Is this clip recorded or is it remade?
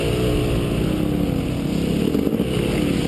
recorded